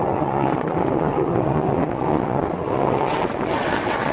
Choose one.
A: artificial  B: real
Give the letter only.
A